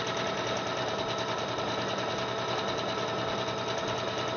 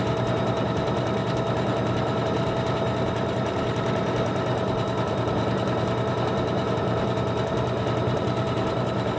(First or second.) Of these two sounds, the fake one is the second